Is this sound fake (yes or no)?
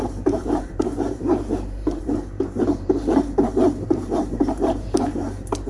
yes